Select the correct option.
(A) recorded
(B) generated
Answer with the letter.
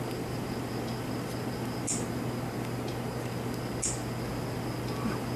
A